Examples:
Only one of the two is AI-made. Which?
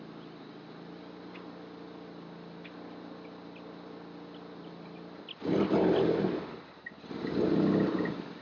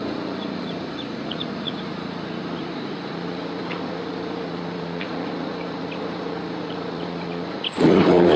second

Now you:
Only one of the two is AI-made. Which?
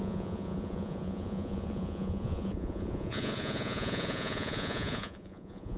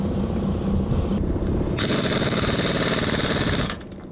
first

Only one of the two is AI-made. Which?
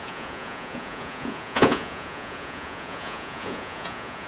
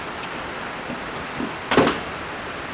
first